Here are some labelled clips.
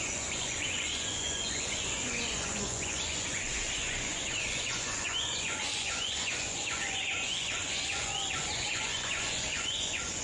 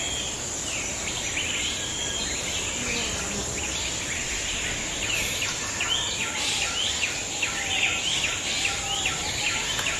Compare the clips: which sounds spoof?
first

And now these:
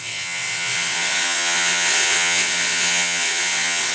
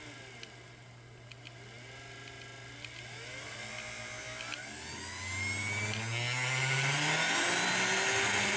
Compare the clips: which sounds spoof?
first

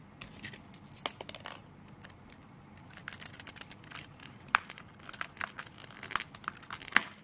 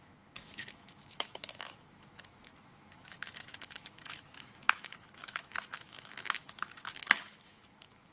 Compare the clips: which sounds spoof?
second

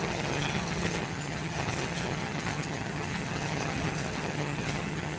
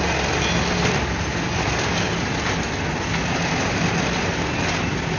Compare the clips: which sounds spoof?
first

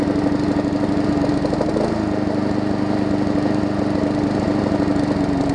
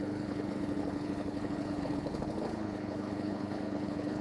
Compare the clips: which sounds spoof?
second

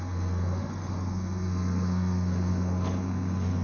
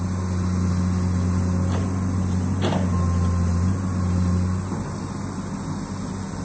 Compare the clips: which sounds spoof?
first